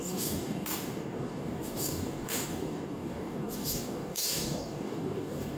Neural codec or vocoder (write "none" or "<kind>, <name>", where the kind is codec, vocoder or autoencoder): codec, DAC